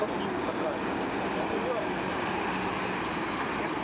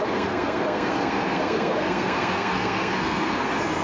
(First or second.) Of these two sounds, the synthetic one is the second